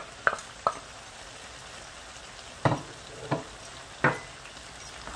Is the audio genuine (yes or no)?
yes